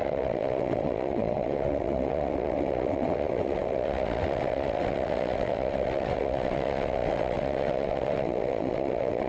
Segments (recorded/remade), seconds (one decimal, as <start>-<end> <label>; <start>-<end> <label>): 0.0-9.3 remade